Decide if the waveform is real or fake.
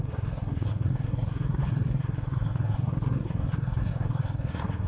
fake